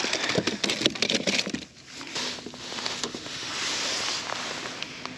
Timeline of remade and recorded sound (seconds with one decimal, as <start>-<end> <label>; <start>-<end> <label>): 0.0-2.6 recorded; 2.6-3.5 remade; 3.5-5.2 recorded